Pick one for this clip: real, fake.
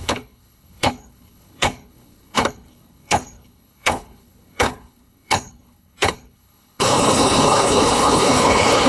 fake